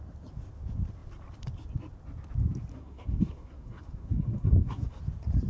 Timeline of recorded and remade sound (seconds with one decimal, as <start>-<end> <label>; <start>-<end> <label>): 0.0-2.7 recorded; 2.7-5.0 remade; 5.0-5.5 recorded